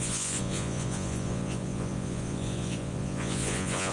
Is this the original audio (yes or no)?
no